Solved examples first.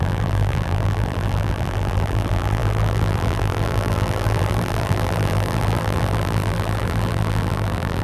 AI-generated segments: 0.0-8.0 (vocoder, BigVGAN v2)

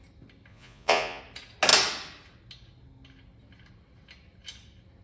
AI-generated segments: 0.5-1.2 (vocoder, Vocos)

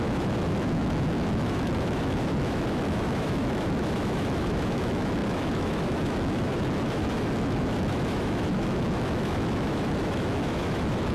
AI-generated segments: 0.0-11.1 (autoencoder, DAC-VAE)

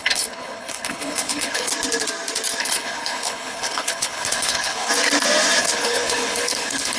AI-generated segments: 0.0-1.7 (codec, HILCodec); 2.6-4.9; 5.6-7.0